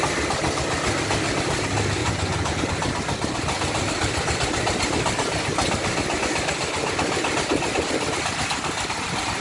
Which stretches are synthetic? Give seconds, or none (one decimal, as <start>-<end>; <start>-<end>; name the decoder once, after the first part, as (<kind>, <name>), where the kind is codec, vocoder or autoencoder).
2.0-2.6 (vocoder, Vocos)